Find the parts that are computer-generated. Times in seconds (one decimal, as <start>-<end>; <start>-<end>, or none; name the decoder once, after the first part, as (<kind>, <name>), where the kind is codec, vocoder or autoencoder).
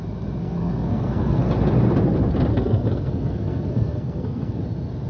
0.4-1.5 (codec, SNAC); 2.5-4.6